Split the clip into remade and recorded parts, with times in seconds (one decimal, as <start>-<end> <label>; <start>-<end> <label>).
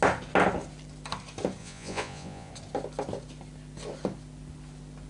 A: 0.0-1.6 recorded; 1.6-2.5 remade; 2.5-5.1 recorded